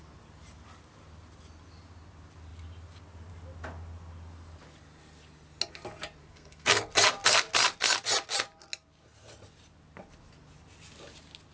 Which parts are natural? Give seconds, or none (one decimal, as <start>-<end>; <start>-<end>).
0.0-6.2; 6.9-11.5